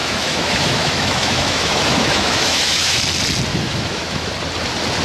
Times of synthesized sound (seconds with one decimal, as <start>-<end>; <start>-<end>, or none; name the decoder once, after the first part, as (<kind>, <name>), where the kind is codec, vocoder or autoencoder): 0.0-3.0 (autoencoder, DAC-VAE); 3.5-4.3